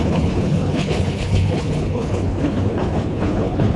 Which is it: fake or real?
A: fake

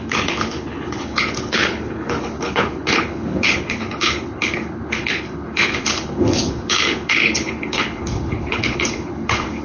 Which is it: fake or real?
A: fake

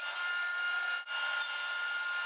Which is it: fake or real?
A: real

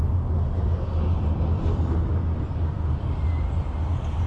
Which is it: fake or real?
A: real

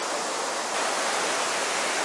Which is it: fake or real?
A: real